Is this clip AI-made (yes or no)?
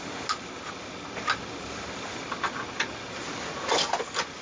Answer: no